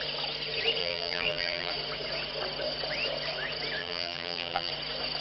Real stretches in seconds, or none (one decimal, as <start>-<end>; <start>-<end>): 0.0-0.8; 1.7-3.8; 4.7-5.2